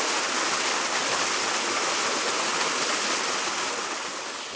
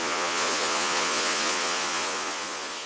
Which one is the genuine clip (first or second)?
first